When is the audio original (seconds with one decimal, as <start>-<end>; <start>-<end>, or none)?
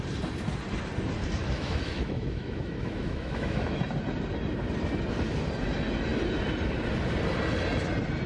0.0-1.4; 3.8-8.3